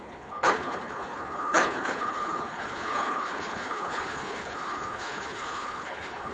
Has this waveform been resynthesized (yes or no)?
yes